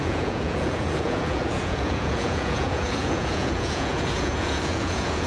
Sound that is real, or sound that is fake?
fake